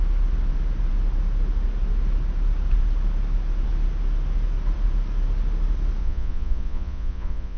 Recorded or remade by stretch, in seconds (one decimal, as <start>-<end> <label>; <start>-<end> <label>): 0.0-6.0 recorded; 6.0-7.6 remade

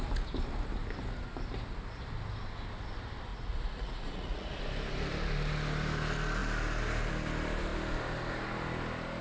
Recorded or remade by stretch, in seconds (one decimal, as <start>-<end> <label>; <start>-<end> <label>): 0.0-3.3 recorded; 3.3-4.6 remade; 4.6-9.2 recorded

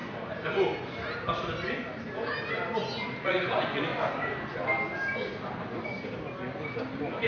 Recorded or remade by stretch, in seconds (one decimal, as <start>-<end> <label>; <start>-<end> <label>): 0.0-3.2 recorded; 3.2-3.9 remade; 3.9-7.3 recorded